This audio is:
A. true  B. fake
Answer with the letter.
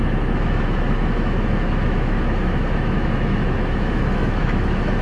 B